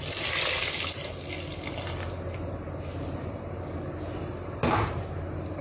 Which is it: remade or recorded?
recorded